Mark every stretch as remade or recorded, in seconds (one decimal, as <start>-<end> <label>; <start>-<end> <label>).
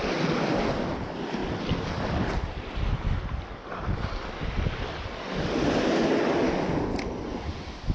0.0-7.9 recorded